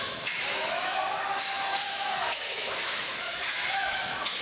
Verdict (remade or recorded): remade